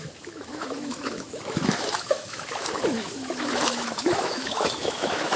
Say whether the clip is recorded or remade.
remade